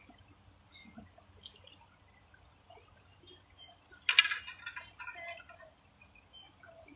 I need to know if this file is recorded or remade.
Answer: recorded